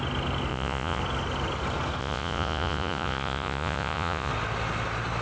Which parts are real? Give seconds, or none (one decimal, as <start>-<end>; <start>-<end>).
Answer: 0.0-0.5; 1.0-2.0; 4.3-5.2